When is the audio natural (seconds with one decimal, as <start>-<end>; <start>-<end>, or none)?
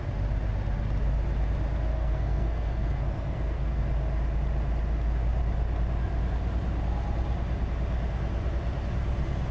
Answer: 0.0-1.9; 3.8-9.5